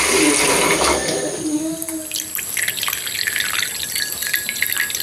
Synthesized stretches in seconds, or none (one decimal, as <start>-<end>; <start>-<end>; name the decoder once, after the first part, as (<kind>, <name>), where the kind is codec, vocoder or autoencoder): none